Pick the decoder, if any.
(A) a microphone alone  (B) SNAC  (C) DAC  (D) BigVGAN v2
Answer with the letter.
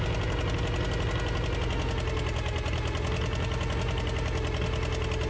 A